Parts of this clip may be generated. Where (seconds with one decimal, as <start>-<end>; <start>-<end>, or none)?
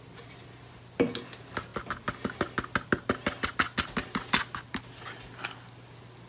none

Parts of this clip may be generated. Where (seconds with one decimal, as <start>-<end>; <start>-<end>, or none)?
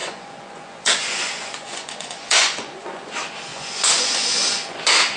0.0-3.1; 3.5-4.8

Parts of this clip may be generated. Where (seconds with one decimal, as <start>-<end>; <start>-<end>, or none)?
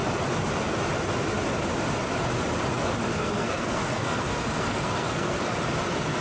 3.1-5.4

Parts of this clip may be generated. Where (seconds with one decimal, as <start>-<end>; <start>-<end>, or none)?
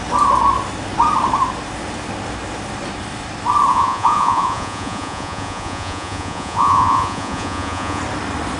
3.7-8.0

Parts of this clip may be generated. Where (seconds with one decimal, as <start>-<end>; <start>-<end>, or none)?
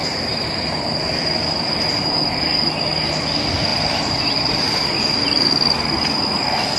0.0-2.7; 3.7-5.5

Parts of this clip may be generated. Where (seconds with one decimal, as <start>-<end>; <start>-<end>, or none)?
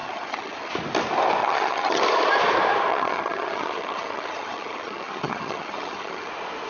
0.0-0.7; 1.4-2.0; 2.9-6.3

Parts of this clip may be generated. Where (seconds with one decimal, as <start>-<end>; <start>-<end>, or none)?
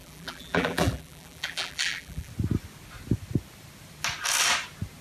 0.0-2.3